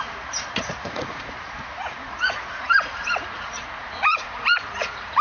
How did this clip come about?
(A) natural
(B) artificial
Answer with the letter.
B